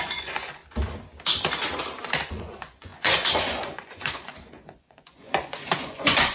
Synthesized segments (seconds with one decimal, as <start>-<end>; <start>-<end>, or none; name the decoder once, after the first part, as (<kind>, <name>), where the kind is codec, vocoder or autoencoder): 0.0-0.6 (vocoder, Vocos); 2.3-6.3